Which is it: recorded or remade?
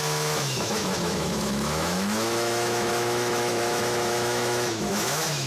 remade